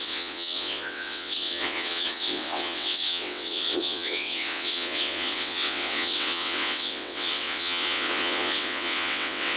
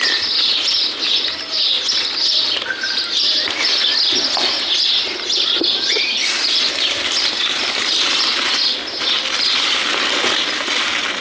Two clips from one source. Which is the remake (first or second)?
first